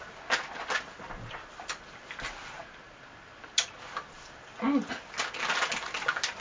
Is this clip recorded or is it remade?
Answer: recorded